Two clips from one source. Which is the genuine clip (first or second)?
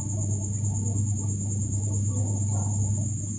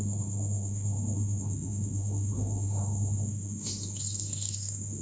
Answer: first